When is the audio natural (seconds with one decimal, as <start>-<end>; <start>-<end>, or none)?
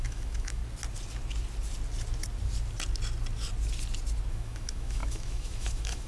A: 0.6-4.3